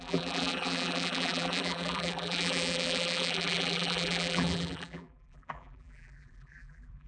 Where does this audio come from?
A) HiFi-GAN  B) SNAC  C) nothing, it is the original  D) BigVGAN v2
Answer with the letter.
D